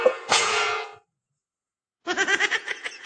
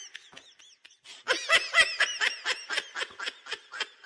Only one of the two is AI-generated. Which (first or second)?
first